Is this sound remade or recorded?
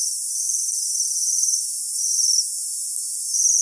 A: recorded